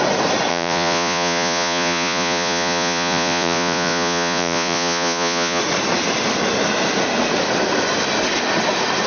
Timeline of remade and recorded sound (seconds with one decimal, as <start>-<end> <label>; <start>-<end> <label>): 0.0-0.5 recorded; 0.5-5.6 remade; 5.6-9.1 recorded